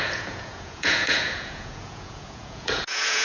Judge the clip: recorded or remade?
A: remade